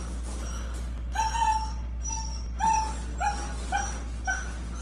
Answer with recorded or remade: recorded